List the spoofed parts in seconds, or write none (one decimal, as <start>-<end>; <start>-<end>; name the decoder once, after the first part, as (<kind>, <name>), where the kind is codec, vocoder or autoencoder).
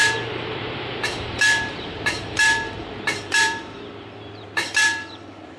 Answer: 0.0-5.6 (vocoder, BigVGAN v2)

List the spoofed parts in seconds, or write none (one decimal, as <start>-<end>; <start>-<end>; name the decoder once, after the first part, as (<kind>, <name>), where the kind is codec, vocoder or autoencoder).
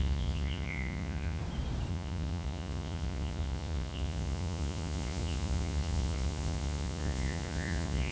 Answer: 0.0-1.4 (vocoder, Vocos); 1.9-8.1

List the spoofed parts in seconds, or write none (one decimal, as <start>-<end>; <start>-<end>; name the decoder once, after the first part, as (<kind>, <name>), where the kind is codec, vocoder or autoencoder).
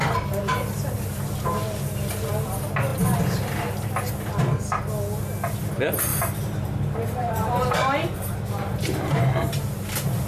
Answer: 0.4-1.2 (vocoder, BigVGAN v2); 6.1-9.2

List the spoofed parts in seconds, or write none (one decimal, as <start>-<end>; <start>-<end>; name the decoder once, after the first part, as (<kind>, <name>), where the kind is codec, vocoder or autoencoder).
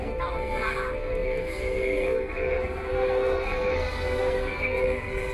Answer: 0.0-5.3 (codec, SNAC)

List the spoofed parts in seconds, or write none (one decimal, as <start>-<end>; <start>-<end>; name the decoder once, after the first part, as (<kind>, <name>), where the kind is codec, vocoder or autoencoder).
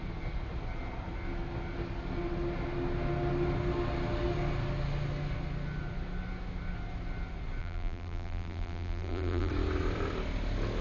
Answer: 7.6-9.5 (vocoder, BigVGAN v2)